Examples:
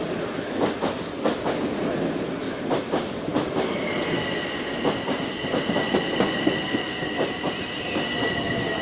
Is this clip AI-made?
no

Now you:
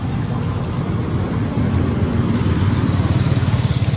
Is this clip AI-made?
no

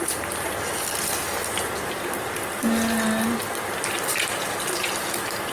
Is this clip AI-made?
no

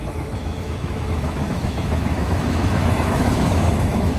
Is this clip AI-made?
yes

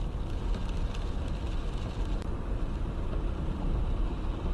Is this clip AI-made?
no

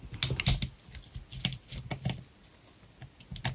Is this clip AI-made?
no